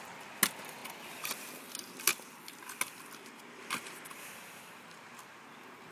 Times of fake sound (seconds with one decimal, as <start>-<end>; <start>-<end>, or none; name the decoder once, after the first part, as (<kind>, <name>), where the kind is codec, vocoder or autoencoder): none